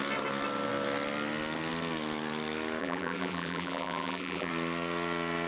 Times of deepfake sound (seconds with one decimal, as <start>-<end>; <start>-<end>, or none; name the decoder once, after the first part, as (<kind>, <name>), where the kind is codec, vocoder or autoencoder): 2.8-4.5 (vocoder, BigVGAN v2)